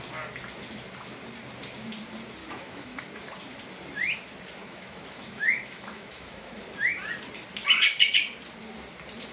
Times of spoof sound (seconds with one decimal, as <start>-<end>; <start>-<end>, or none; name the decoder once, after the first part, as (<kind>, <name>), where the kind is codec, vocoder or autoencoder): 2.4-3.0 (autoencoder, DAC-VAE); 4.6-6.6